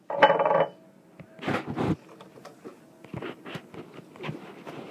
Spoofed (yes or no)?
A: no